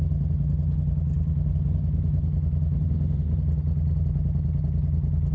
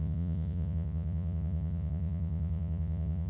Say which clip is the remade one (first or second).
second